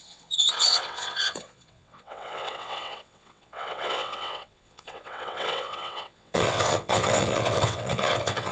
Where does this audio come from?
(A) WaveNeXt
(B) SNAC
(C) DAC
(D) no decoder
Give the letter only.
A